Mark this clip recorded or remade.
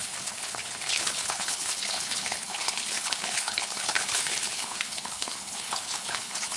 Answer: remade